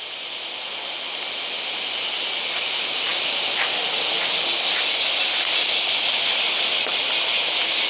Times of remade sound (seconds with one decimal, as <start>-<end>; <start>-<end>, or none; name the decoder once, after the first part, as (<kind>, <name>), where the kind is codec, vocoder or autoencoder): none